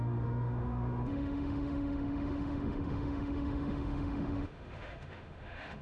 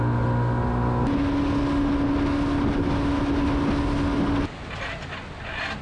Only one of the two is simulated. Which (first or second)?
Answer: first